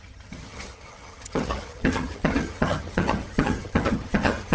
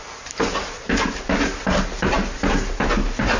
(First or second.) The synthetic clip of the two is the first